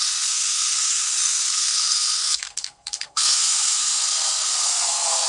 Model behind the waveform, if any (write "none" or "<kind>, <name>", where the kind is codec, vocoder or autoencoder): codec, SNAC